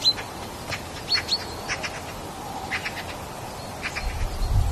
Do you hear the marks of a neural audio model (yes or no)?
no